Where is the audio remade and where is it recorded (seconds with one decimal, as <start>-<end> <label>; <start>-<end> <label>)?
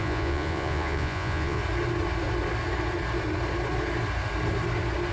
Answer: 0.0-1.6 remade; 1.6-5.1 recorded